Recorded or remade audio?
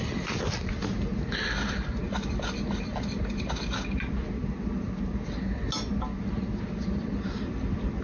recorded